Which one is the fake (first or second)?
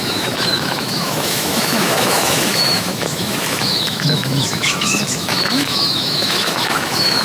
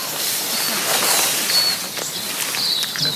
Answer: first